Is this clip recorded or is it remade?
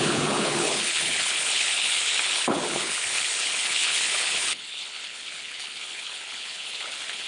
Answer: remade